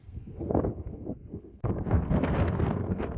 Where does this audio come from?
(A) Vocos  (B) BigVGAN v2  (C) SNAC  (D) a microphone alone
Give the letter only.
C